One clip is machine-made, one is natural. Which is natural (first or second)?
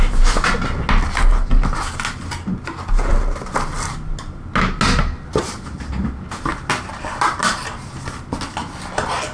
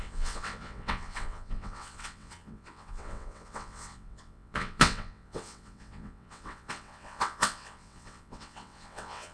first